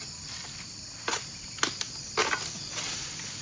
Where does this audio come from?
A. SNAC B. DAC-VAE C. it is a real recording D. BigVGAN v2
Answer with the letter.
C